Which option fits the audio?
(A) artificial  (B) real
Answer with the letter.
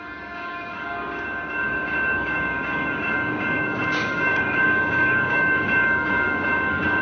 A